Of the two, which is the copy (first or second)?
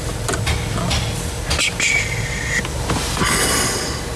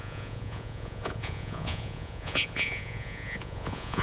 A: second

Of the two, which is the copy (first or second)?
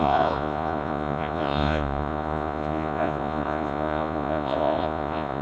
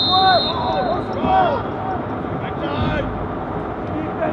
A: first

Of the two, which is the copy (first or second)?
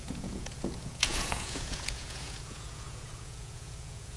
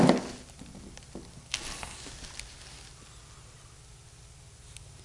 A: first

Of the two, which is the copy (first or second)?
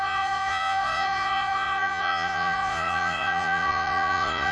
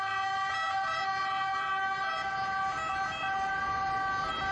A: first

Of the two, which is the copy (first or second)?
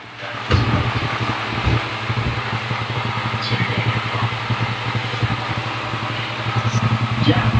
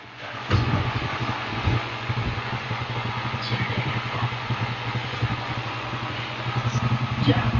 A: second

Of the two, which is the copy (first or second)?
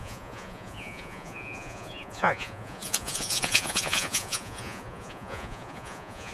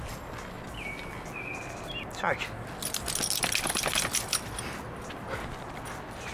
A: first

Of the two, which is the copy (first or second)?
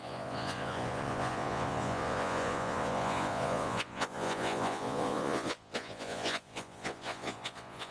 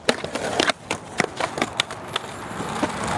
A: first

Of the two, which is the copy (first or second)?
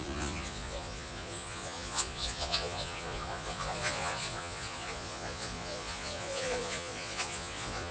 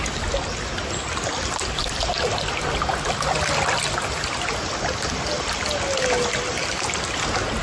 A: first